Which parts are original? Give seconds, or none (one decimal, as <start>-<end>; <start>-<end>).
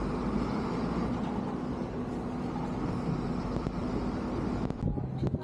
0.0-5.4